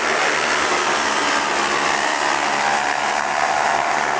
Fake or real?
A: real